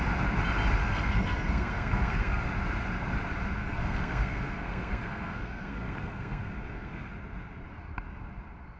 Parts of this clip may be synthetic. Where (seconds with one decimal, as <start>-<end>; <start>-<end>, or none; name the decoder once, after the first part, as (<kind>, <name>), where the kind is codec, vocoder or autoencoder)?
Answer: 0.8-2.5 (codec, SNAC); 3.6-7.1